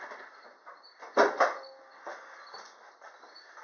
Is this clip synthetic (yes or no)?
no